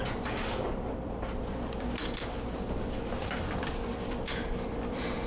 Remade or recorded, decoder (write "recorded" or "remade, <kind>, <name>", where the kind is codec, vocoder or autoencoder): remade, vocoder, BigVGAN v2